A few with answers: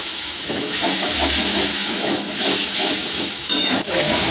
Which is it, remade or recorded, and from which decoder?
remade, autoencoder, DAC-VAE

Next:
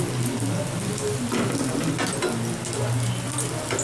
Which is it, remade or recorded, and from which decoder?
recorded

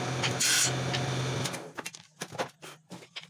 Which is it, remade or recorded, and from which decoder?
recorded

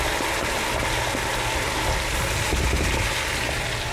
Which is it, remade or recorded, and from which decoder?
recorded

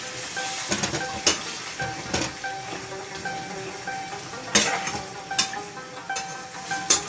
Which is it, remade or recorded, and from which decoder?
recorded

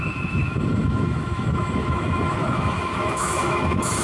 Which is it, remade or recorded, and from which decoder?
remade, autoencoder, DAC-VAE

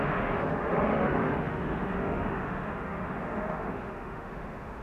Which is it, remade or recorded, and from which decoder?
remade, autoencoder, DAC-VAE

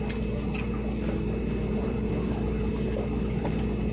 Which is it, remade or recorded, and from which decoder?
recorded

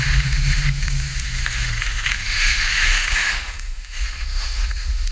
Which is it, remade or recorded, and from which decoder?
remade, autoencoder, DAC-VAE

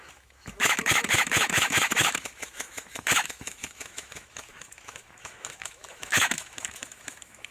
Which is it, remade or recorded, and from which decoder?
remade, autoencoder, DAC-VAE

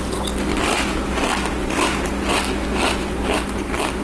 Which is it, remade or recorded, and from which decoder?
recorded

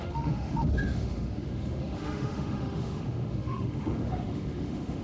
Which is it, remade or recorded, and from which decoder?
remade, autoencoder, DAC-VAE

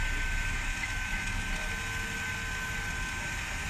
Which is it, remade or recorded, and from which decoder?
recorded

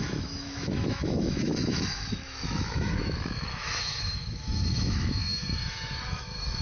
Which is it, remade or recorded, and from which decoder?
remade, autoencoder, DAC-VAE